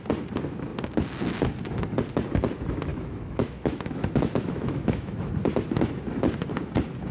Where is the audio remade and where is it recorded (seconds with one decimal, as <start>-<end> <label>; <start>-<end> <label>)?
0.0-2.9 recorded; 2.9-5.3 remade; 5.3-7.1 recorded